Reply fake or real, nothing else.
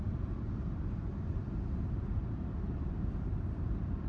fake